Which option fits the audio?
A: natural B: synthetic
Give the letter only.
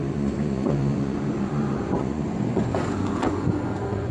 B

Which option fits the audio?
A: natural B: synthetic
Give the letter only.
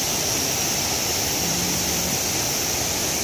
A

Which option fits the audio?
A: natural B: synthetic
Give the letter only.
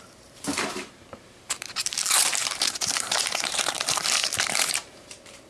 B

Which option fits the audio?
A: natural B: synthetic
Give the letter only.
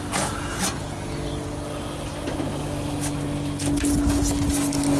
A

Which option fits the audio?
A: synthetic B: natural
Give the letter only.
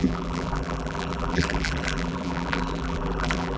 A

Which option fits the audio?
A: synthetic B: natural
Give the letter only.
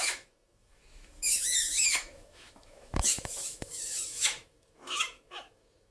A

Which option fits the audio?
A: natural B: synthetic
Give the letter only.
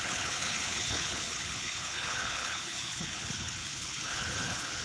B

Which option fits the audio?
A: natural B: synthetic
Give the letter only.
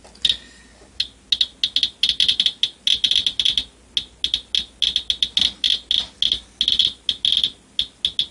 A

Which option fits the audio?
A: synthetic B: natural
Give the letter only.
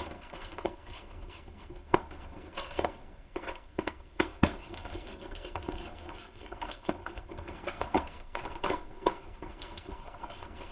A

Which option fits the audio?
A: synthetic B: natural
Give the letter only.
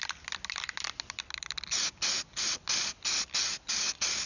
B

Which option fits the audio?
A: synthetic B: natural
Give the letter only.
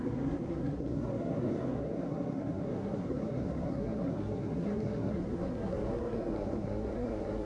A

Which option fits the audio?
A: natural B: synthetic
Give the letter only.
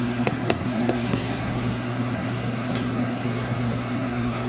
B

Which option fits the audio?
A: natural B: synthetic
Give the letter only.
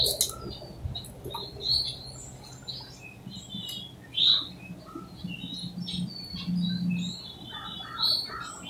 A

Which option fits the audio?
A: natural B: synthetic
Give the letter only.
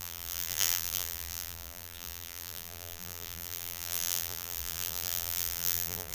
B